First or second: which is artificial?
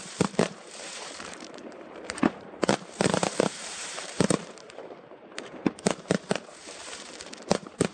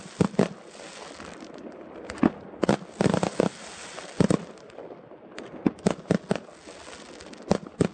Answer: first